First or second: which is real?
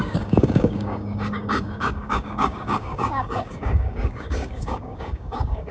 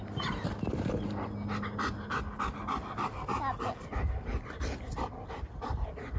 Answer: second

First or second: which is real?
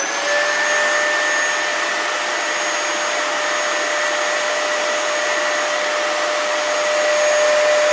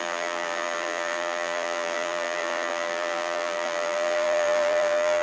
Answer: first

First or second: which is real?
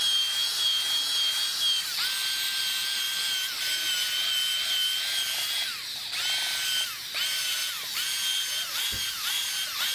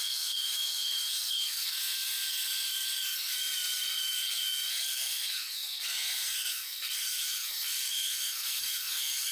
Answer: first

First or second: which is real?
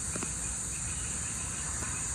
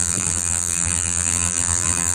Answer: first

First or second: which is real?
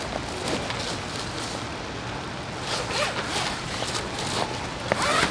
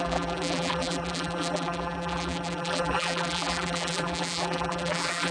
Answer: first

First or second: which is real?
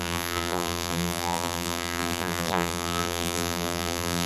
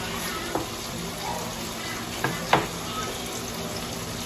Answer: second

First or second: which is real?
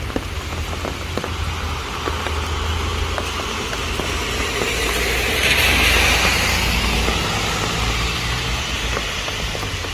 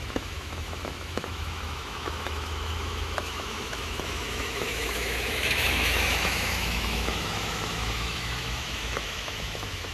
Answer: first